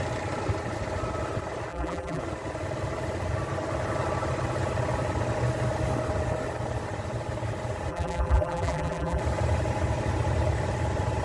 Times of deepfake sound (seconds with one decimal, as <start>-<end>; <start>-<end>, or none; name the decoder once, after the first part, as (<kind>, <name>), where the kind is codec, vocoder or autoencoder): 1.7-2.2 (vocoder, BigVGAN v2); 7.9-9.2